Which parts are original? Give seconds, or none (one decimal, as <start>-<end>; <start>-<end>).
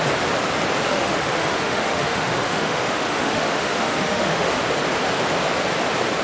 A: 0.0-0.9; 4.6-6.2